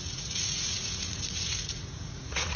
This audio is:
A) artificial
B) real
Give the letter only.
A